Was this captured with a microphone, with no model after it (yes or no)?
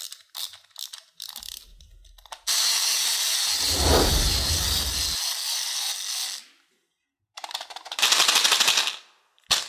yes